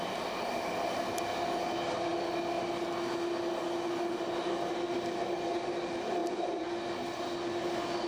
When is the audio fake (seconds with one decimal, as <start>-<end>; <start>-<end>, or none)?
none